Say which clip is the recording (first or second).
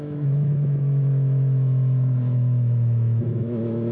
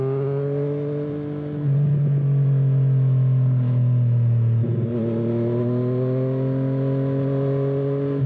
second